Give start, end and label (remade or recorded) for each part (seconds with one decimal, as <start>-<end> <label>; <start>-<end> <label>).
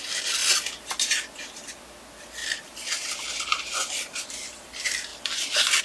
0.0-2.4 recorded; 2.4-3.7 remade; 3.7-5.1 recorded; 5.1-5.8 remade